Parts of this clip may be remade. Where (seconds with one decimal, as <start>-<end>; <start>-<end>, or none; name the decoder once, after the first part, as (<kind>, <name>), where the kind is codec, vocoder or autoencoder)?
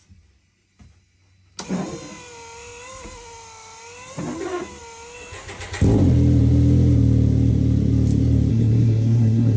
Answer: 8.5-9.6 (codec, SNAC)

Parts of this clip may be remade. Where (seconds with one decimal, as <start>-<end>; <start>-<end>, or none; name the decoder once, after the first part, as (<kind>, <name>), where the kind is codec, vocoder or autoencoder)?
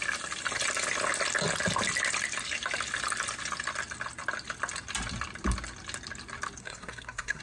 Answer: 6.6-7.4 (codec, SNAC)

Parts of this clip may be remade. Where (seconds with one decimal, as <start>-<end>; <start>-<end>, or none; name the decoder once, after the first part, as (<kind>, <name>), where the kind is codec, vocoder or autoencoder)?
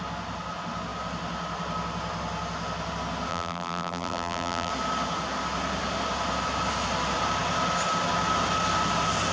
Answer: 3.3-4.7 (vocoder, BigVGAN v2)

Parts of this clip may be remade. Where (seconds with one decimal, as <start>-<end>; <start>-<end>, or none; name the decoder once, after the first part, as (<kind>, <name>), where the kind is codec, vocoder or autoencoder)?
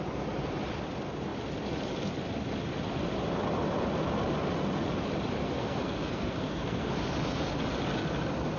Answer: 5.4-6.9 (codec, SNAC)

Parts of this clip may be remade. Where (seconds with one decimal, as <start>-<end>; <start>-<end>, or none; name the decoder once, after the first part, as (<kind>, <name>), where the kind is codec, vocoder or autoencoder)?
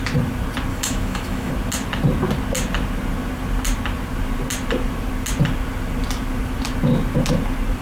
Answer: 0.7-1.5 (autoencoder, DAC-VAE)